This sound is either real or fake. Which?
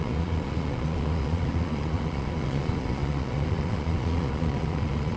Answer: fake